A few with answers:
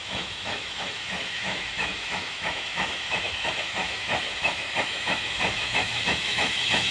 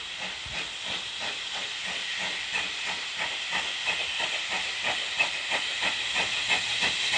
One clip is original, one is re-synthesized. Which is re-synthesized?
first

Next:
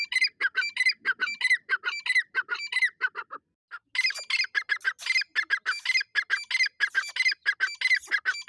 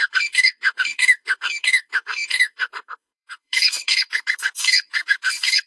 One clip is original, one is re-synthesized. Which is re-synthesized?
second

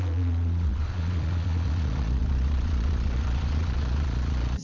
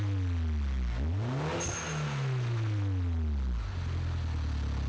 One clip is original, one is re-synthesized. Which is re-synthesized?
first